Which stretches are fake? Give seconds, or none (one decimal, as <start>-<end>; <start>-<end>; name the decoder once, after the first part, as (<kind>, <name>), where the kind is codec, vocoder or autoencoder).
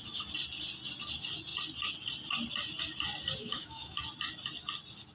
3.4-4.0 (autoencoder, DAC-VAE)